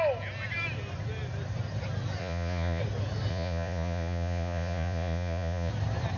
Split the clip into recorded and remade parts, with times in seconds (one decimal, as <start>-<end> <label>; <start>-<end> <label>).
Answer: 0.0-2.2 recorded; 2.2-2.8 remade; 2.8-3.3 recorded; 3.3-5.7 remade; 5.7-6.2 recorded